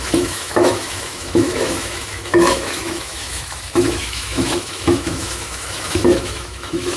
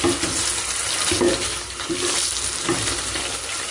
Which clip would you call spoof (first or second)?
first